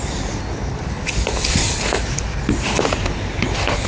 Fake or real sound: real